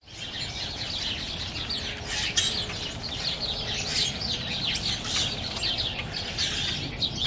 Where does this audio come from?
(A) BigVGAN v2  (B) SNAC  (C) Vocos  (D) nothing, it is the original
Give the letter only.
D